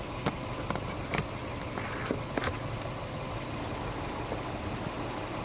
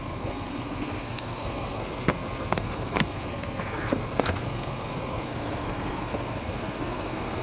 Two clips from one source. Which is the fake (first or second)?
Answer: second